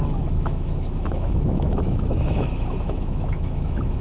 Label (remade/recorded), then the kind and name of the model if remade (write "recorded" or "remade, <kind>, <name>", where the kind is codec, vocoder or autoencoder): remade, autoencoder, DAC-VAE